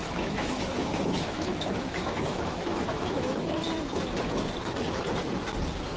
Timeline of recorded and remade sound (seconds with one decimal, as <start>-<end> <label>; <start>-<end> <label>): 0.0-3.6 remade; 3.6-6.0 recorded